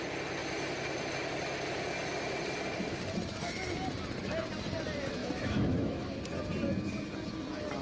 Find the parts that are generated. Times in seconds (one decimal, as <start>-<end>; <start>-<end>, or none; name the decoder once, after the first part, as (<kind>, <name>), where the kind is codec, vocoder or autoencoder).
5.2-6.2 (autoencoder, DAC-VAE)